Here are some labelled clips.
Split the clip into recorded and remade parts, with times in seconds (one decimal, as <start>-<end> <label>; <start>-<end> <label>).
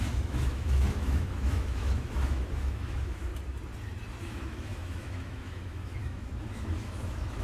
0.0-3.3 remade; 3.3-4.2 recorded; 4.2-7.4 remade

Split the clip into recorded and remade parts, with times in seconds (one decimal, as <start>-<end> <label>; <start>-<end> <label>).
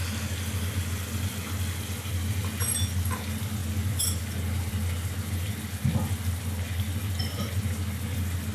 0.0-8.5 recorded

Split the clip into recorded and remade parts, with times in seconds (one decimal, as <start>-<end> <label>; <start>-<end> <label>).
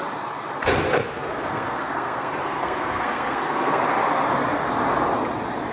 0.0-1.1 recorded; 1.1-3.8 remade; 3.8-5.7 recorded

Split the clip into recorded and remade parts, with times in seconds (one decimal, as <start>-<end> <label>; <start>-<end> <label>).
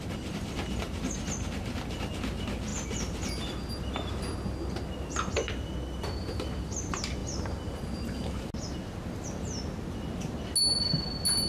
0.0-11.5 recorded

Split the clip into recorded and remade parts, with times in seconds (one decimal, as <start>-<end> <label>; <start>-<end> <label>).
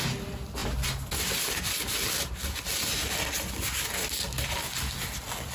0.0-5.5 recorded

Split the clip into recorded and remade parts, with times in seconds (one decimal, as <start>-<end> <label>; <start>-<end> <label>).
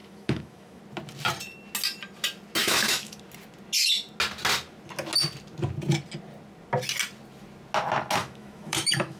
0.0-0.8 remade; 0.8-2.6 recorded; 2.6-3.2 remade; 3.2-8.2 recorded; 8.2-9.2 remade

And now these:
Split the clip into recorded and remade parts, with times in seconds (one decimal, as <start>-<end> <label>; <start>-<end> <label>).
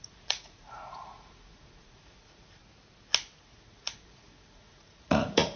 0.0-2.6 remade; 2.6-3.4 recorded; 3.4-5.6 remade